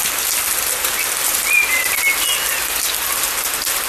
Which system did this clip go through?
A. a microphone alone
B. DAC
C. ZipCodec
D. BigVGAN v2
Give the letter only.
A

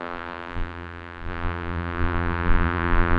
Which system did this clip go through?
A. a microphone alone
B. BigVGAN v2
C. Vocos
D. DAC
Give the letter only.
B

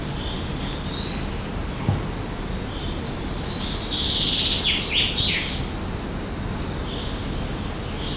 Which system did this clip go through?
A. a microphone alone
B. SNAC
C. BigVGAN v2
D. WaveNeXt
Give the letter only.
A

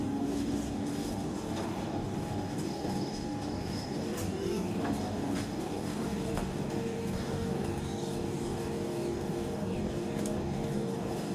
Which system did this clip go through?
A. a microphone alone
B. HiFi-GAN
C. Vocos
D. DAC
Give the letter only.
D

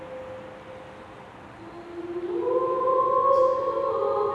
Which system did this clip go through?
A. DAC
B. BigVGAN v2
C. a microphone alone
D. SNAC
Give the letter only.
C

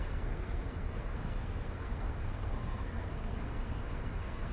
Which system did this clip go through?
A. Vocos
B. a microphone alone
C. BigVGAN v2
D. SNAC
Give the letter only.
D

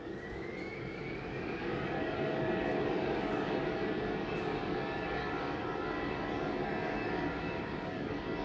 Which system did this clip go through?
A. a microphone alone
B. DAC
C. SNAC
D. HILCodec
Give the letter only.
B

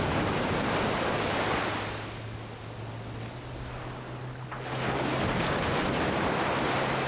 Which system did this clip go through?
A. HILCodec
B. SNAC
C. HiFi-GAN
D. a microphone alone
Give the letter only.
D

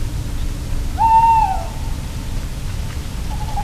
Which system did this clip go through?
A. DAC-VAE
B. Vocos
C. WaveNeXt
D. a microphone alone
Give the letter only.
D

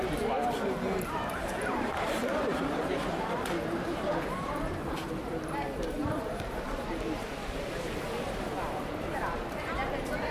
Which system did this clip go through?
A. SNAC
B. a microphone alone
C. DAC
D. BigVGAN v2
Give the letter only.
D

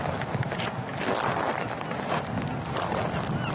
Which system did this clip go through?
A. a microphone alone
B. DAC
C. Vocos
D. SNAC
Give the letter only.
A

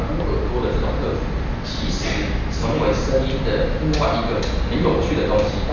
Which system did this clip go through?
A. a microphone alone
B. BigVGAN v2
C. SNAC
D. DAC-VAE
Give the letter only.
A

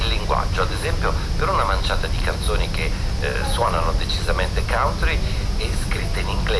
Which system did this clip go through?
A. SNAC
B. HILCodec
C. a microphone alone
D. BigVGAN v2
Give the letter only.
C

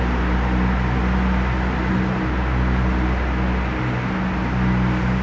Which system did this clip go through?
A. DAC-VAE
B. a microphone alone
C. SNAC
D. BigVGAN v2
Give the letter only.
B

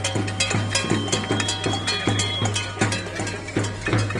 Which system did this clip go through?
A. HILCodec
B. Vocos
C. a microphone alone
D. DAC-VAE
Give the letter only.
C